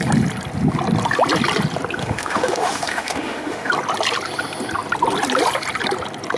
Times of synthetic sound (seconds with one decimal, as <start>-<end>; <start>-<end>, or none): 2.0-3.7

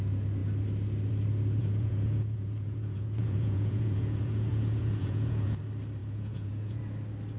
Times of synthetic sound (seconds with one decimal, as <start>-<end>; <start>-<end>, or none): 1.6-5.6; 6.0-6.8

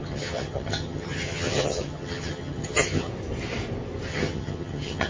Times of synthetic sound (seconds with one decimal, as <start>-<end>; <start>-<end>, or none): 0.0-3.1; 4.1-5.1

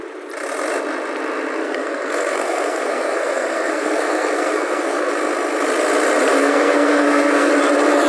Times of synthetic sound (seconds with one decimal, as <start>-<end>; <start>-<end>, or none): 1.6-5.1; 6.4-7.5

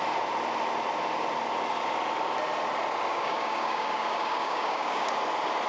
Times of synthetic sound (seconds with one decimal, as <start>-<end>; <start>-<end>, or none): 3.1-5.1

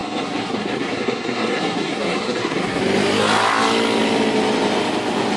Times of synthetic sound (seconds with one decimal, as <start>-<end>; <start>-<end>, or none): 0.0-2.8

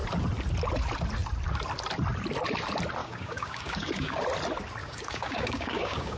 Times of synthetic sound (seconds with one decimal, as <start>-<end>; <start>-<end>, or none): 3.0-4.2; 4.8-6.2

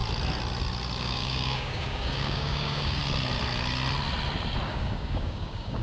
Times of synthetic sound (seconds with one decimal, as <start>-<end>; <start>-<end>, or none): 1.0-3.0; 4.7-5.8